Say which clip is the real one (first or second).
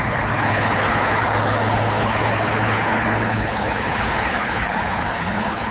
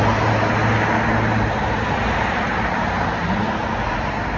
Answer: second